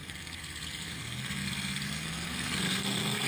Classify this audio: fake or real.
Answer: fake